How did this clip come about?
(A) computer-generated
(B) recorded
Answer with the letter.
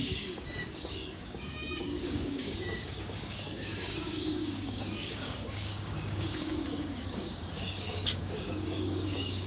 A